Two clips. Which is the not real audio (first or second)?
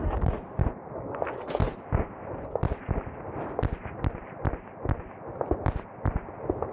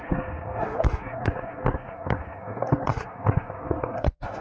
second